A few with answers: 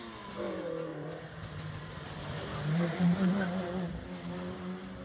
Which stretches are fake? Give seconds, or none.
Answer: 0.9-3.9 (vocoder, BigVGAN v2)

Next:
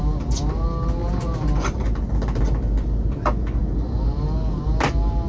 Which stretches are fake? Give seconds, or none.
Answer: none

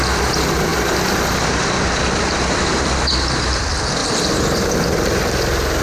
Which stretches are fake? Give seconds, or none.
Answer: 4.0-5.8 (vocoder, BigVGAN v2)

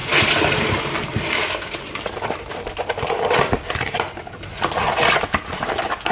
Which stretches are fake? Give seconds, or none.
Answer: 0.0-2.0 (vocoder, BigVGAN v2)

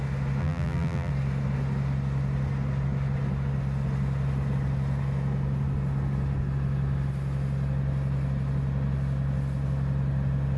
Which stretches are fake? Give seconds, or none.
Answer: 0.4-1.1 (vocoder, BigVGAN v2)

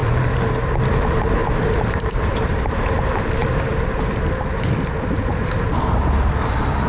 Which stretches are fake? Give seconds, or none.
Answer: 0.0-0.7 (vocoder, BigVGAN v2); 1.4-2.9

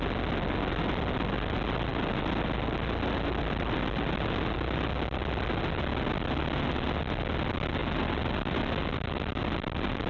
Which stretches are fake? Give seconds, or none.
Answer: none